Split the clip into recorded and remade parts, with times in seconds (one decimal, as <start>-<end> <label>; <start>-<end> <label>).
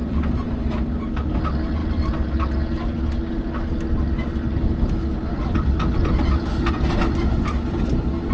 0.0-8.3 recorded